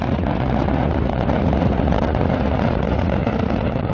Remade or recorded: remade